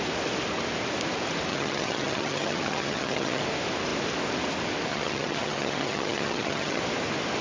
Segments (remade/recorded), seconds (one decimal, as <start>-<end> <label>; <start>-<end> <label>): 0.0-1.5 recorded; 1.5-3.4 remade; 3.4-4.9 recorded; 4.9-6.8 remade; 6.8-7.4 recorded